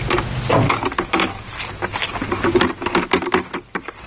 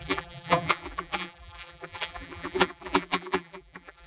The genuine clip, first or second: first